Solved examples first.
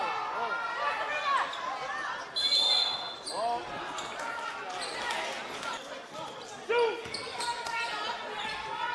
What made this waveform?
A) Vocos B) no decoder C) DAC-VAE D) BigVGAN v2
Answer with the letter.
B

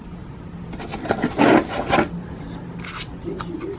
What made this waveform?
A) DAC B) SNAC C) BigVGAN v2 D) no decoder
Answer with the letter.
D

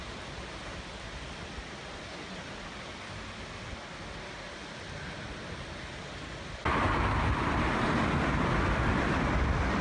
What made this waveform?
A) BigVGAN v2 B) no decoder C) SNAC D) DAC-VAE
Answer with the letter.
B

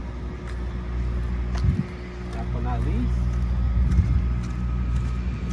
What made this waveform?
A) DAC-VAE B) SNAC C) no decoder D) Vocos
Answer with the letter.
C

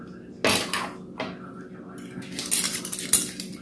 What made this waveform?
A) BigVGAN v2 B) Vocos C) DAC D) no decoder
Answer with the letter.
D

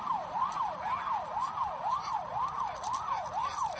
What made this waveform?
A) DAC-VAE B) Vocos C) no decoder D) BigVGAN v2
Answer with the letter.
C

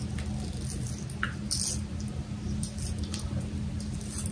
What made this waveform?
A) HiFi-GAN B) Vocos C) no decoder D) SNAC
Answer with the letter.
C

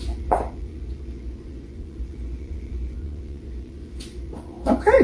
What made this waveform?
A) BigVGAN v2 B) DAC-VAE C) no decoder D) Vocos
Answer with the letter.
D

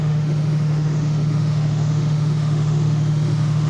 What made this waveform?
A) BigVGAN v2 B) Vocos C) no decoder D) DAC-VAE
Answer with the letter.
D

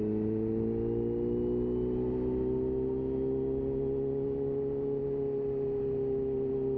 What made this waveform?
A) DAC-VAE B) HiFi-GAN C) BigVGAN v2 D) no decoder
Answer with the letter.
D